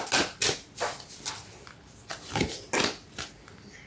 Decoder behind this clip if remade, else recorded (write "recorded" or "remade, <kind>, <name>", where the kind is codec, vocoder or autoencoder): recorded